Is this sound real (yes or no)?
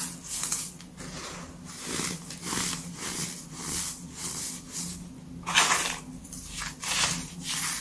yes